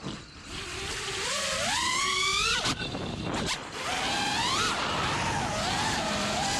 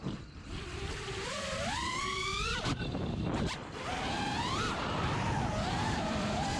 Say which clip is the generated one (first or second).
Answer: second